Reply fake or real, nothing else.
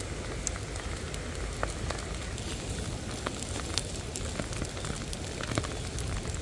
real